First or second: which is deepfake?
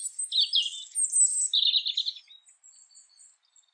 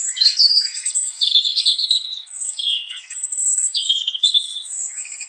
second